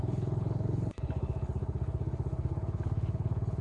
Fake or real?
fake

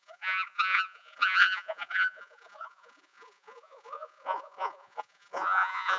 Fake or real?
fake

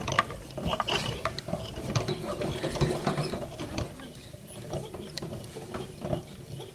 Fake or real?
real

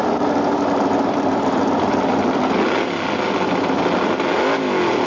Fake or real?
real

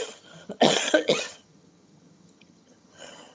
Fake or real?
fake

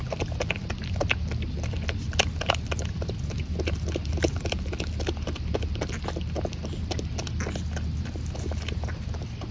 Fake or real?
real